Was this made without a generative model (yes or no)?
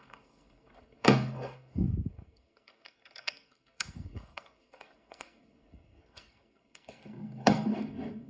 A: no